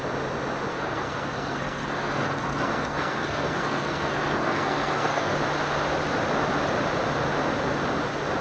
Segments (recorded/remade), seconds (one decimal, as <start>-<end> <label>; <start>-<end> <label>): 0.0-0.7 recorded; 0.7-5.3 remade; 5.3-8.4 recorded